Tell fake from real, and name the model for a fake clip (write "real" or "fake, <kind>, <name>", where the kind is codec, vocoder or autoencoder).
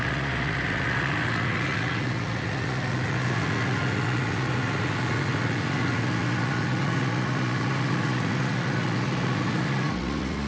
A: fake, vocoder, Vocos